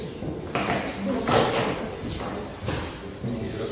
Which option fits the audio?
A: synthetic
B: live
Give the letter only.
B